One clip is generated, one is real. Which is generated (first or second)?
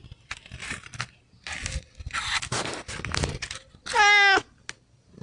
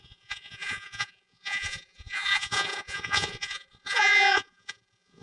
second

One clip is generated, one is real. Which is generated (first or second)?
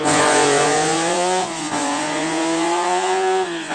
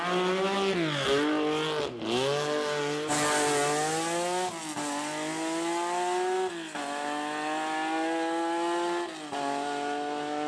first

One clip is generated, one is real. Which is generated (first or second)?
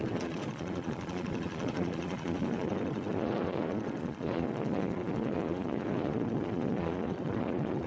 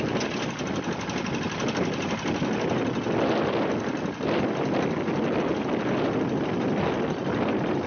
first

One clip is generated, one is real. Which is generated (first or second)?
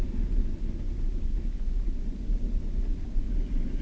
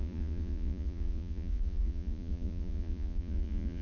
second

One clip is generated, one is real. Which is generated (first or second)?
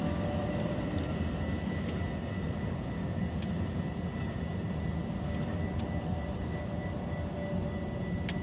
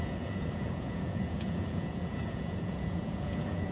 second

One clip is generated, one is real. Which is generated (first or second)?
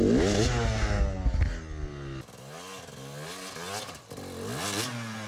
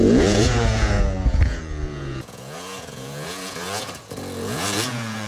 second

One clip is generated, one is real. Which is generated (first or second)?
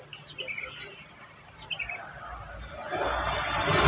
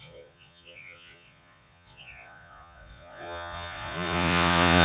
second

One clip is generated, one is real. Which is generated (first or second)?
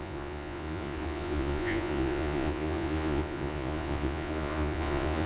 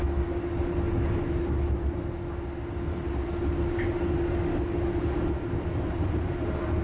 first